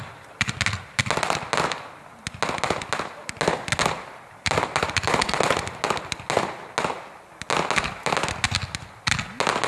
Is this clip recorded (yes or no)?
yes